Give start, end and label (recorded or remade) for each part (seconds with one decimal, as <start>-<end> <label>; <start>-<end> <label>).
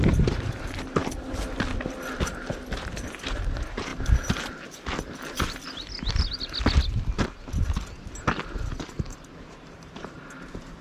0.0-1.0 remade; 1.0-2.5 recorded; 2.5-3.9 remade; 3.9-8.8 recorded; 8.8-10.8 remade